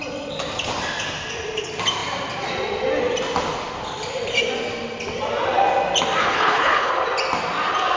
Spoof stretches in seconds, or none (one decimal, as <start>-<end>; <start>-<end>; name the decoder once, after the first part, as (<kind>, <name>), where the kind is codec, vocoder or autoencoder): 6.2-6.9 (codec, HILCodec)